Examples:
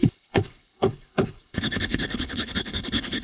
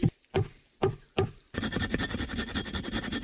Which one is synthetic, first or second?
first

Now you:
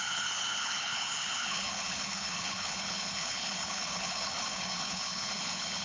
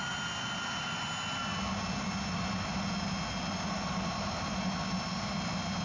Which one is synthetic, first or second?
first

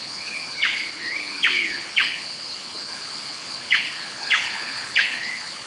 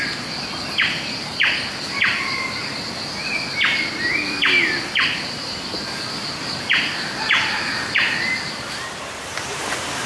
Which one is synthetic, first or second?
first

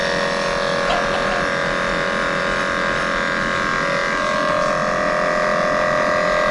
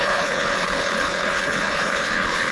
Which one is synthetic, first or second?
second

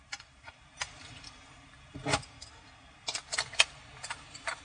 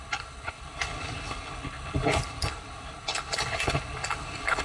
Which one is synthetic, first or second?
second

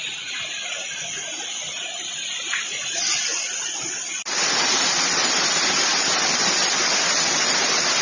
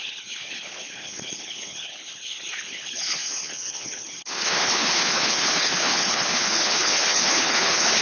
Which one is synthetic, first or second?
second